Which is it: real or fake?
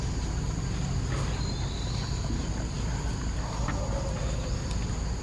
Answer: real